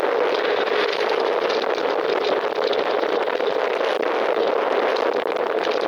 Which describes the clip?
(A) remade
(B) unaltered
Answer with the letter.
B